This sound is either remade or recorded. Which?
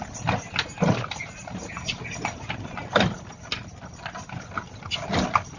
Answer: recorded